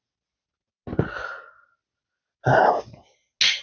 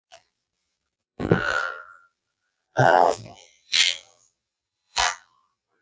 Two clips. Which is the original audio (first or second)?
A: first